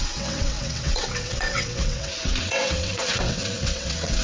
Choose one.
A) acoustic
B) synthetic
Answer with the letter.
B